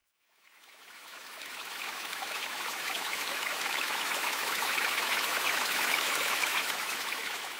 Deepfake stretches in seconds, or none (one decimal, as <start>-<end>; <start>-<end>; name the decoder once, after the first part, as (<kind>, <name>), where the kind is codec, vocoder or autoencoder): 0.0-7.6 (autoencoder, DAC-VAE)